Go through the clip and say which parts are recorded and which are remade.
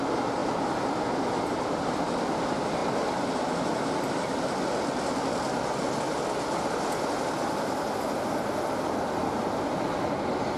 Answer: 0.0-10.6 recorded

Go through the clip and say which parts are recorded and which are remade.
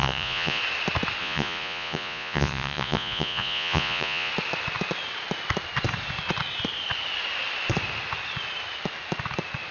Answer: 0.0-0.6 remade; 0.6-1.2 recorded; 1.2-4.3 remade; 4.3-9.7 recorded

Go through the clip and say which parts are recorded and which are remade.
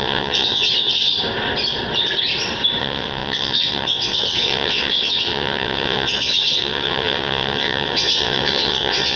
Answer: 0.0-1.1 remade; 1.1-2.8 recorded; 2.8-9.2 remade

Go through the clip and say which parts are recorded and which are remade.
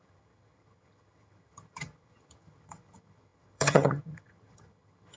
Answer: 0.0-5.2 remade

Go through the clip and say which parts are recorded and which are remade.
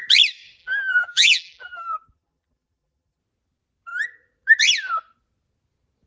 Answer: 0.0-0.6 recorded; 0.6-3.2 remade; 3.2-6.1 recorded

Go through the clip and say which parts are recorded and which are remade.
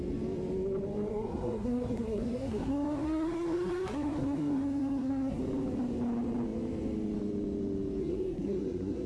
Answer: 0.0-1.1 recorded; 1.1-5.4 remade; 5.4-8.0 recorded; 8.0-9.1 remade